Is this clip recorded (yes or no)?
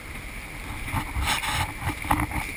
yes